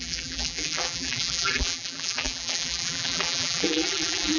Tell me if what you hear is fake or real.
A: fake